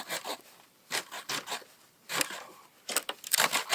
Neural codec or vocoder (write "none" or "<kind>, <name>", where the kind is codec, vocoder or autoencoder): none